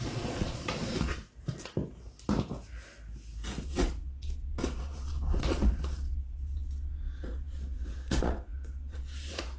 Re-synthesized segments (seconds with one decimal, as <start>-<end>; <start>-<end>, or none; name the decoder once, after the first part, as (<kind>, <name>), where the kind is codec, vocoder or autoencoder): 0.0-1.2 (vocoder, Vocos); 3.6-9.6